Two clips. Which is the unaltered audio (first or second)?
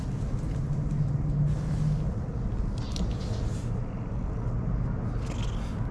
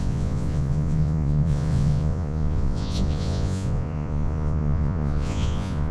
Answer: first